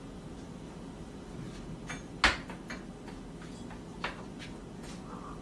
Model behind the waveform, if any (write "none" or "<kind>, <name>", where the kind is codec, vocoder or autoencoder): none